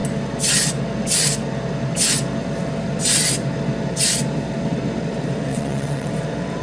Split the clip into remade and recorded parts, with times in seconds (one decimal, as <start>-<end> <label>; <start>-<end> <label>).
0.0-5.5 recorded; 5.5-6.1 remade; 6.1-6.6 recorded